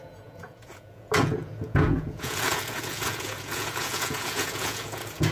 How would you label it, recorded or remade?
remade